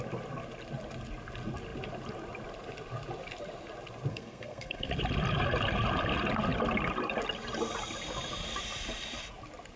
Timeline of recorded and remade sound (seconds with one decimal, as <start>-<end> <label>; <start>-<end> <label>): 0.0-4.1 recorded; 4.1-4.9 remade; 4.9-9.8 recorded